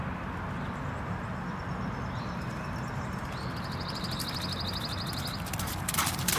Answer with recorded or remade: recorded